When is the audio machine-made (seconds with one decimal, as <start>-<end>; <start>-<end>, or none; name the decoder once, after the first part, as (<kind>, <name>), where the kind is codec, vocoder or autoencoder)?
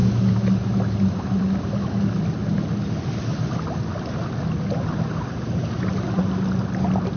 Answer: none